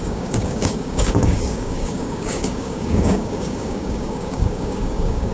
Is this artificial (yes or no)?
yes